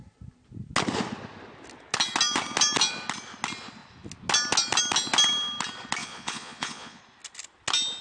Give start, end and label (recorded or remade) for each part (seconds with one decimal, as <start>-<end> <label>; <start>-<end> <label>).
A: 0.0-6.0 recorded; 6.0-7.0 remade; 7.0-8.0 recorded